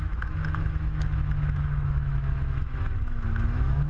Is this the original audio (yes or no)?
no